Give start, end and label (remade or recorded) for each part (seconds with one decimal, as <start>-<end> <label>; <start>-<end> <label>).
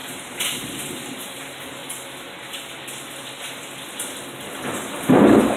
0.0-1.8 remade; 1.8-5.6 recorded